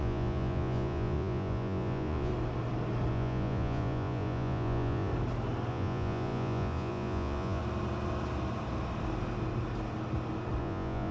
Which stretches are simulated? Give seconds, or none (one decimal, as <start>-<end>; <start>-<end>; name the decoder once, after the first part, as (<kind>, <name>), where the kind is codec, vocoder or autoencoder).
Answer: 0.0-2.3 (vocoder, Vocos); 3.1-5.1; 5.7-7.6; 10.6-11.1